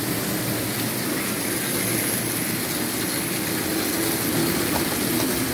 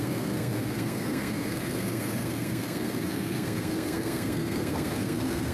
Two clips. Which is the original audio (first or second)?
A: first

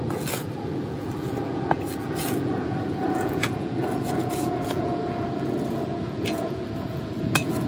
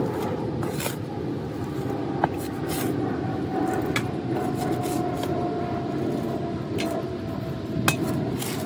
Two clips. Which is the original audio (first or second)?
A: second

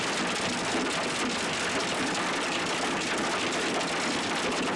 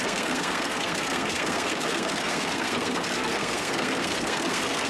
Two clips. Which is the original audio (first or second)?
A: first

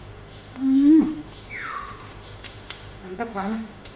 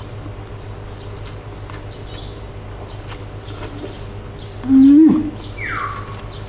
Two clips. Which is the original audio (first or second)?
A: second